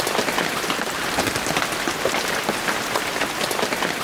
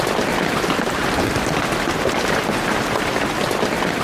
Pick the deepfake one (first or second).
second